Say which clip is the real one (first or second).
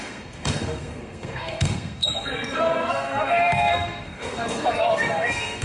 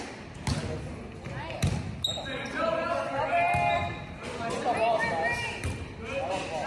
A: second